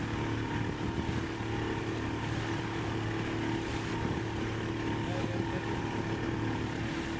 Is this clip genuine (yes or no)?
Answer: yes